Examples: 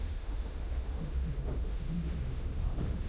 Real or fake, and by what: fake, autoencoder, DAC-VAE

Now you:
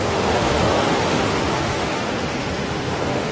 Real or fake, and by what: fake, autoencoder, DAC-VAE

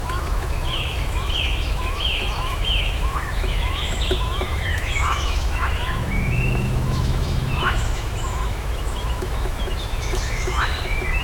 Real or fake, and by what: fake, autoencoder, DAC-VAE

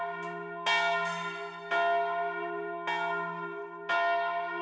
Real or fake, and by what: real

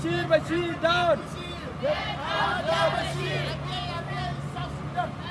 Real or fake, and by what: real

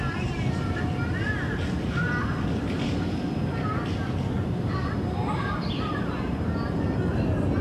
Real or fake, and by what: real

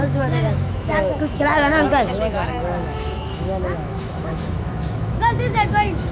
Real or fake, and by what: fake, autoencoder, DAC-VAE